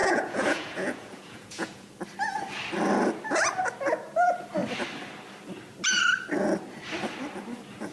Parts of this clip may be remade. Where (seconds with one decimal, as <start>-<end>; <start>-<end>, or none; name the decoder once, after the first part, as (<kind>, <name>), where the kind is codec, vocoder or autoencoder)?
0.0-1.9 (vocoder, Vocos)